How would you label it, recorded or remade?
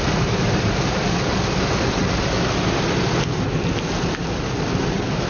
recorded